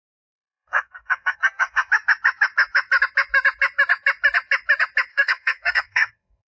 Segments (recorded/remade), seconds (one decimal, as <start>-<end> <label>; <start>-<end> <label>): 0.0-1.9 remade; 1.9-5.1 recorded; 5.1-6.5 remade